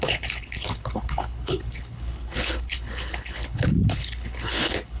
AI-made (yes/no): yes